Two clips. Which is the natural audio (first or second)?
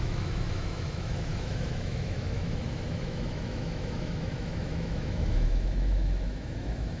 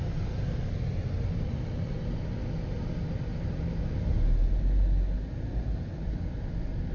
second